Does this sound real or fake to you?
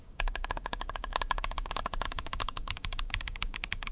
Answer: fake